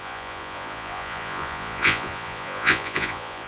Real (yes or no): no